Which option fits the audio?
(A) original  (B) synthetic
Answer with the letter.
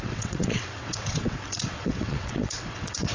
B